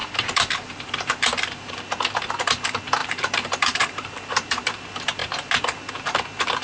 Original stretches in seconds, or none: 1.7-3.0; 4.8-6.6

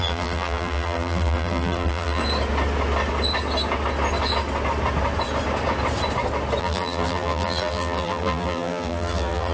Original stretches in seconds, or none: 2.2-6.6

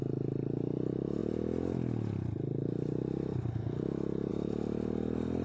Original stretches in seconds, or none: 0.0-5.4

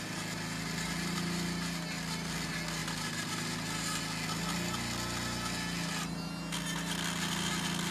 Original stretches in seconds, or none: 0.0-2.8; 4.0-7.9

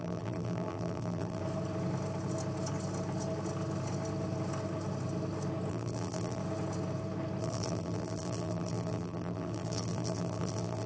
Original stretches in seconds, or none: 1.4-5.7; 6.4-7.4

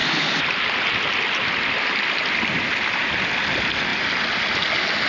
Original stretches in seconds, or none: 0.0-3.9; 4.4-5.1